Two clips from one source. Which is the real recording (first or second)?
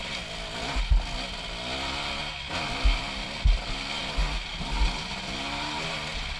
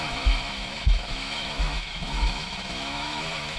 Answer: first